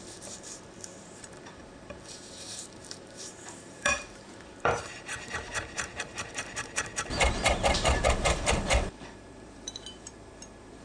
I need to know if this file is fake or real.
fake